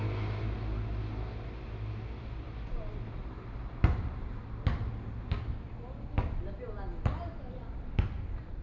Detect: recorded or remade recorded